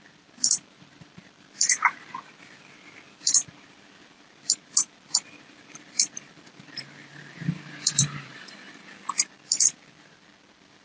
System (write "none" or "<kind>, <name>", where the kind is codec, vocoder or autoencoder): vocoder, BigVGAN v2